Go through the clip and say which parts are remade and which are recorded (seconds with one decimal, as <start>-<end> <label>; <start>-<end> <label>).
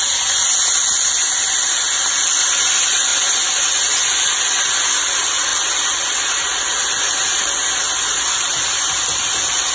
0.0-9.7 recorded